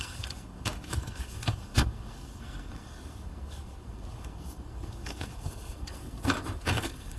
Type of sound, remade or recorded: remade